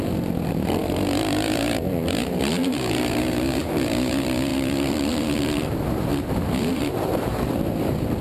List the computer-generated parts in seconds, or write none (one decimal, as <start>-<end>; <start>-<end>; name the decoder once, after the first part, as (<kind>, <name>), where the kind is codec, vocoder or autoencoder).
0.0-8.2 (vocoder, BigVGAN v2)

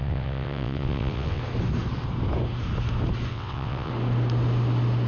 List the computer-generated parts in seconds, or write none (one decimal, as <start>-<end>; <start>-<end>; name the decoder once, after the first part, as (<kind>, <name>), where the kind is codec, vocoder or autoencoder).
0.0-1.4 (vocoder, WaveNeXt); 3.3-3.9

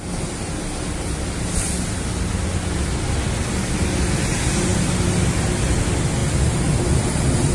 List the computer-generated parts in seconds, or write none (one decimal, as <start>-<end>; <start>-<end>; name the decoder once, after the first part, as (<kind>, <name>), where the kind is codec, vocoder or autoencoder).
none

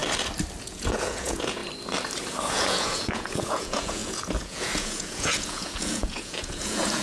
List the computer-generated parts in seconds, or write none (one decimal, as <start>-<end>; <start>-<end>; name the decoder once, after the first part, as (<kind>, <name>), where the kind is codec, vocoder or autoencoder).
0.6-1.6 (vocoder, Vocos); 2.5-7.0

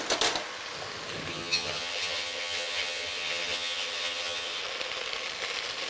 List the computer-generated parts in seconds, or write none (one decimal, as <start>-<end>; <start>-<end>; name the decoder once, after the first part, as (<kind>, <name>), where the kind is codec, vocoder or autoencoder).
1.3-4.6 (vocoder, HiFi-GAN)

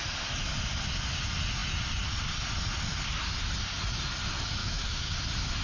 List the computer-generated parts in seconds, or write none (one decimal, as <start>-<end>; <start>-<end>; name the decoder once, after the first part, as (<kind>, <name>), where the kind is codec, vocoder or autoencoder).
4.6-5.1 (autoencoder, DAC-VAE)

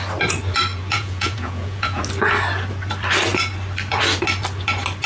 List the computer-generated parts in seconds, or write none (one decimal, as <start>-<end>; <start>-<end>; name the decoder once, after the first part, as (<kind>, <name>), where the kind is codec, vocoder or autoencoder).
0.7-2.0 (vocoder, Vocos)